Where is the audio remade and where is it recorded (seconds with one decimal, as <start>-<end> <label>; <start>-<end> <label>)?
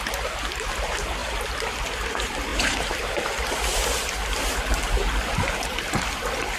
0.0-6.6 recorded